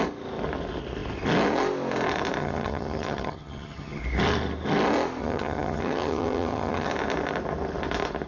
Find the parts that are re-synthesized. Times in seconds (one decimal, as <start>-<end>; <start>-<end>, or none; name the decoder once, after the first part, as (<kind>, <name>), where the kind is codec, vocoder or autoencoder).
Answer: 2.4-4.0 (vocoder, HiFi-GAN); 5.2-6.9